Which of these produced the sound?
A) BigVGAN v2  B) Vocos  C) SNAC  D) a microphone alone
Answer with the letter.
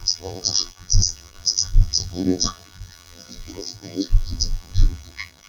A